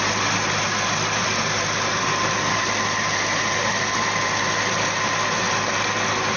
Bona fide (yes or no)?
yes